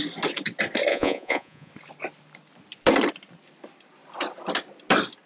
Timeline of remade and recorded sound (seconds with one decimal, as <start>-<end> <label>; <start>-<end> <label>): 0.0-0.9 recorded; 0.9-1.7 remade; 1.7-5.3 recorded